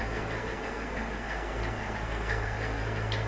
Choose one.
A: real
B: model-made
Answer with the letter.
B